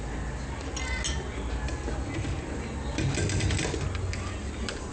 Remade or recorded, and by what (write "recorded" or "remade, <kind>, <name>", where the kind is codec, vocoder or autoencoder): recorded